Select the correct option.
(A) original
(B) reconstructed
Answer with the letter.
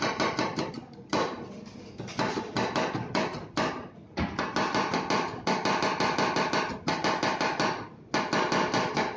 A